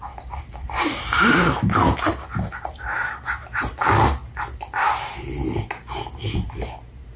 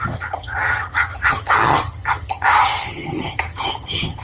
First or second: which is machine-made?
second